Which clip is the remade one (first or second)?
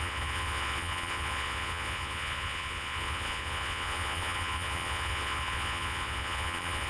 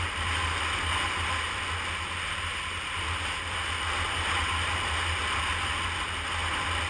first